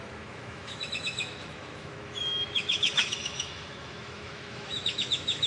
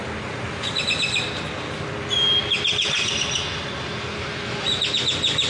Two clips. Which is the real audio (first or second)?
second